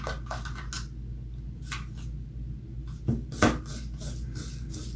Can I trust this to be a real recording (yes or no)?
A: yes